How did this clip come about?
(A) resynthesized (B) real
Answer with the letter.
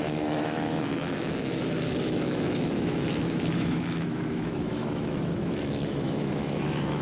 A